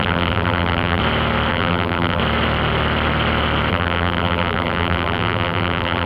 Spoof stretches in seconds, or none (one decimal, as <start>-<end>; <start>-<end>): 0.0-1.0; 1.5-2.2; 3.7-6.1